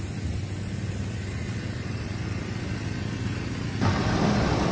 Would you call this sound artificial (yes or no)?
no